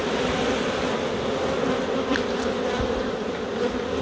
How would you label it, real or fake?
real